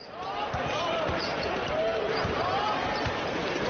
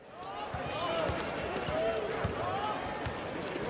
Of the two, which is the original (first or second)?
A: second